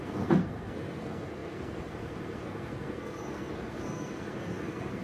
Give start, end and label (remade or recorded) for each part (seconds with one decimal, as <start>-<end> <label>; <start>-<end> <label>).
0.0-5.0 remade